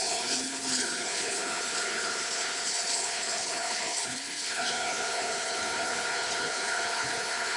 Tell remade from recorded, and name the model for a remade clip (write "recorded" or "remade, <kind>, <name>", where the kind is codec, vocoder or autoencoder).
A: remade, codec, HILCodec